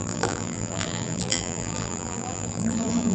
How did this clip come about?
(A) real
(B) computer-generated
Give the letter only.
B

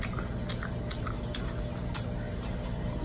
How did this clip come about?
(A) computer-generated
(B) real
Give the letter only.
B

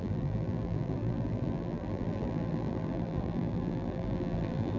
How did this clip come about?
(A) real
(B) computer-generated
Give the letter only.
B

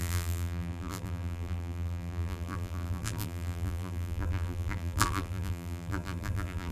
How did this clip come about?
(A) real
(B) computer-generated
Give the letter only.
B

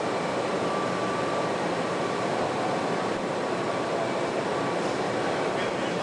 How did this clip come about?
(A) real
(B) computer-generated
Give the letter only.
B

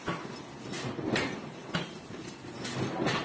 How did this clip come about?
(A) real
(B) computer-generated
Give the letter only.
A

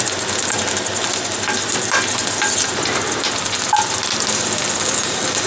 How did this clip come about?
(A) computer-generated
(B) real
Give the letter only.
B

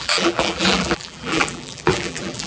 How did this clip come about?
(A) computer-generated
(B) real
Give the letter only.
A